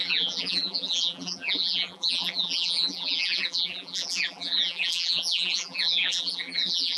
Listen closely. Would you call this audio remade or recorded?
remade